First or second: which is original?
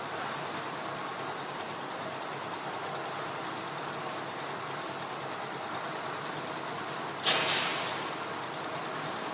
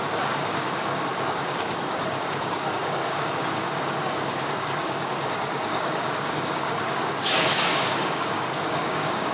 first